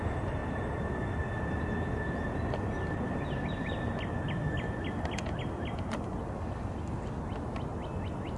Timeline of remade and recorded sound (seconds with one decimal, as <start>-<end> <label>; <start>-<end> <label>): 0.0-8.4 recorded